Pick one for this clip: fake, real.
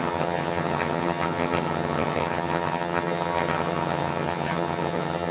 fake